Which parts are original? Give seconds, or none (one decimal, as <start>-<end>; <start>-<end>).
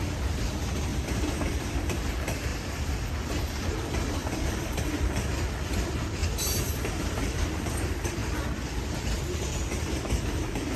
0.9-1.5; 2.5-3.4